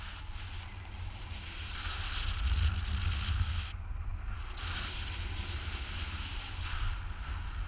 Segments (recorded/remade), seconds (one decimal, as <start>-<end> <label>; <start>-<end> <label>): 0.0-7.7 recorded